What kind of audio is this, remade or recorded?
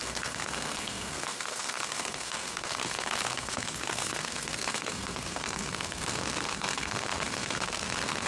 remade